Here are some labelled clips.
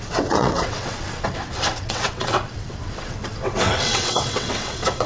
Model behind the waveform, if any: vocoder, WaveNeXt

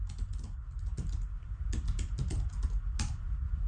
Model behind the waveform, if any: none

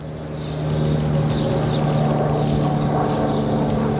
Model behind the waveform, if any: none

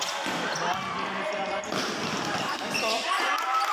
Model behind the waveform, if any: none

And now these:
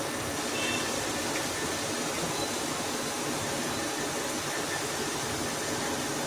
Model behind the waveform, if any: none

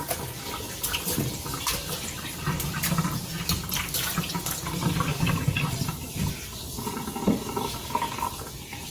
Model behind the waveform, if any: none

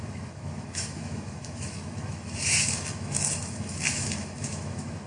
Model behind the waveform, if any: autoencoder, DAC-VAE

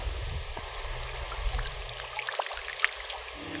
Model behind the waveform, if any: none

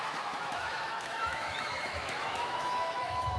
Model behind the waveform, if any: autoencoder, DAC-VAE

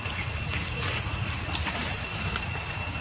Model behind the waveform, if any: vocoder, Vocos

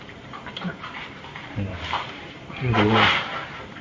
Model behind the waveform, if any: vocoder, BigVGAN v2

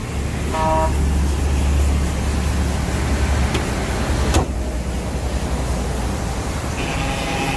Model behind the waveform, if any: none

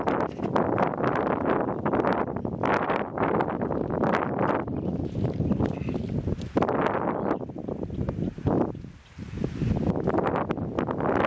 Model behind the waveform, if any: none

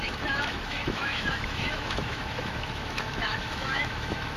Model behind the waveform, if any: autoencoder, DAC-VAE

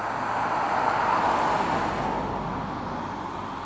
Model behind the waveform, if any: none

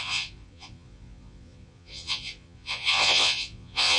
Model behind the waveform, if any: vocoder, Vocos